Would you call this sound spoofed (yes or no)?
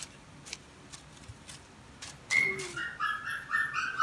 no